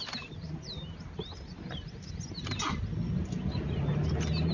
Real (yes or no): yes